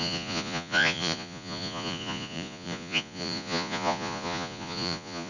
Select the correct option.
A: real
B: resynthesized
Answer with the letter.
B